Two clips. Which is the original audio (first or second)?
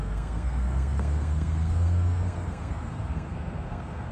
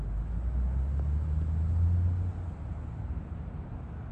second